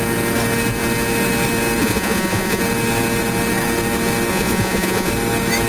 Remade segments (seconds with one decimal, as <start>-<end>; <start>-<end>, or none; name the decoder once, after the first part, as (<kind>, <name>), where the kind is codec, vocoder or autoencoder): 1.8-2.6 (vocoder, Vocos); 4.3-5.1

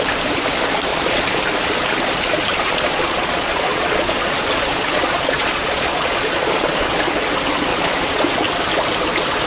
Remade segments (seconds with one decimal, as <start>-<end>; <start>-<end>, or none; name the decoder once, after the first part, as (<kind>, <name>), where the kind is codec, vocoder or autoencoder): 0.9-1.4 (vocoder, Vocos); 2.5-6.9; 7.7-8.2

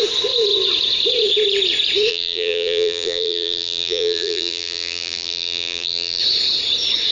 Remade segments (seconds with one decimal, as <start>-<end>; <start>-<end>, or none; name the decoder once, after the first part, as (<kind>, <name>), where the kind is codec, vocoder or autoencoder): 2.1-6.2 (vocoder, BigVGAN v2)